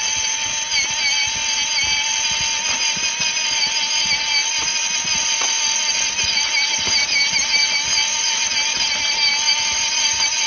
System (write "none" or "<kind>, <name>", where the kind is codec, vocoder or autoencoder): none